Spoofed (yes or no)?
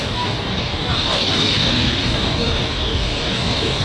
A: yes